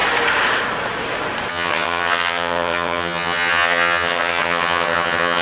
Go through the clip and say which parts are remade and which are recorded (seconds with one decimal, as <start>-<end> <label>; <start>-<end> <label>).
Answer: 0.0-1.5 recorded; 1.5-5.4 remade